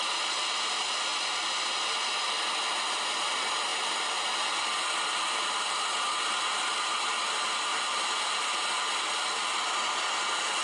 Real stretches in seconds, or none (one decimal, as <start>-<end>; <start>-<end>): 0.0-3.7; 5.5-7.7; 8.5-10.6